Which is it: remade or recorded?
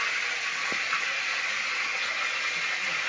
recorded